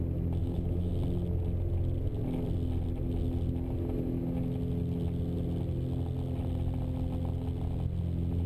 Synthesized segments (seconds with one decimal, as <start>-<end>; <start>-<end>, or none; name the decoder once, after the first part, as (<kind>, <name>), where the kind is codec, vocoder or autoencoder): 0.4-0.9 (autoencoder, DAC-VAE)